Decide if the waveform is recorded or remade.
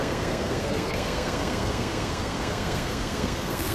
remade